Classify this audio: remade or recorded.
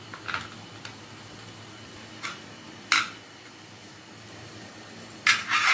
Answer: recorded